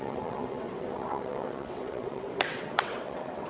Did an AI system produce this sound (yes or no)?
yes